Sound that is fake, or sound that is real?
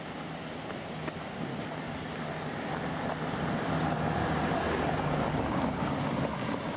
real